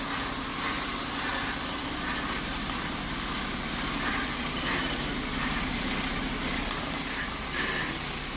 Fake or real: real